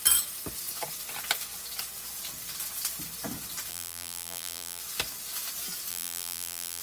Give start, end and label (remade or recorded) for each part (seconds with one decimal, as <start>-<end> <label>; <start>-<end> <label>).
0.0-3.7 recorded; 3.7-4.8 remade; 4.8-5.9 recorded; 5.9-6.8 remade